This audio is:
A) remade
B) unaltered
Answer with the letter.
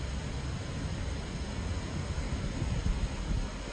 B